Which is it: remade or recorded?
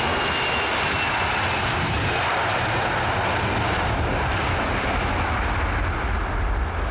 recorded